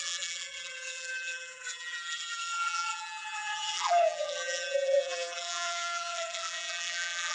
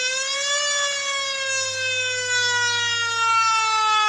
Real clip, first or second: second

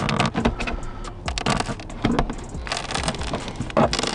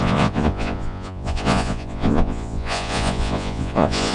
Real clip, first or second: first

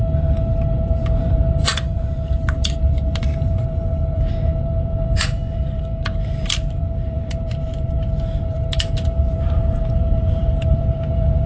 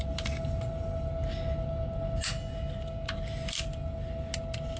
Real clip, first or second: second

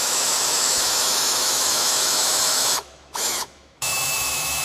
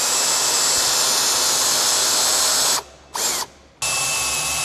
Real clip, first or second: second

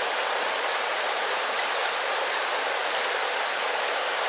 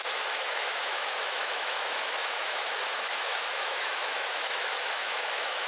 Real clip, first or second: first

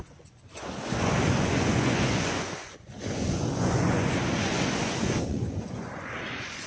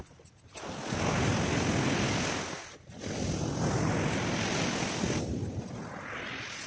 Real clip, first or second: second